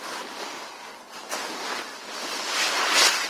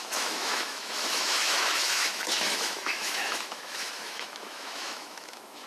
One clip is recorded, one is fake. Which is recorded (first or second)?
first